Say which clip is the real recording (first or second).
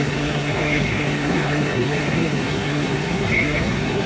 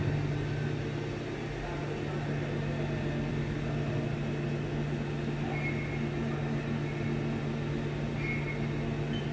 second